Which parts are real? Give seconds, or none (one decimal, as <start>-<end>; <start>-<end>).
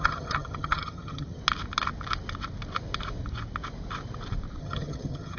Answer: 1.4-4.6